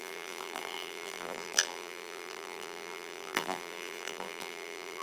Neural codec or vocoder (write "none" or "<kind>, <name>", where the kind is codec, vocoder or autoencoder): vocoder, BigVGAN v2